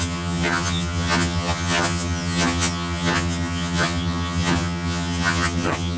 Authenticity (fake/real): fake